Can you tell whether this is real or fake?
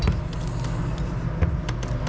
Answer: real